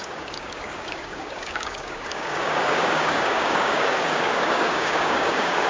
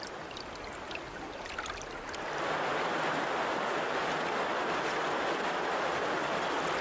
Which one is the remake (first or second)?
first